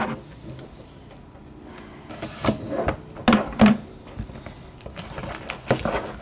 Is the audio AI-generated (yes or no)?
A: no